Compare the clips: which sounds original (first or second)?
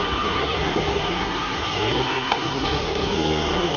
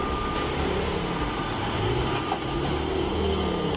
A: second